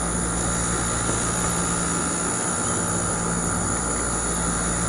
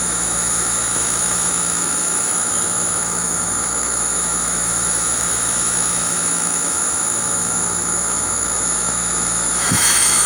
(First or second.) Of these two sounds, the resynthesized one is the second